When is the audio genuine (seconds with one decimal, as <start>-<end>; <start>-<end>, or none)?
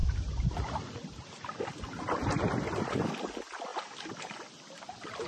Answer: 0.0-5.3